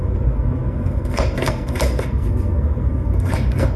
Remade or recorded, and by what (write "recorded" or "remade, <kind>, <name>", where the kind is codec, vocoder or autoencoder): remade, codec, SNAC